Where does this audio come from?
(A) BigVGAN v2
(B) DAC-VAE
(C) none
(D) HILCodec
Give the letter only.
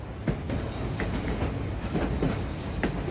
C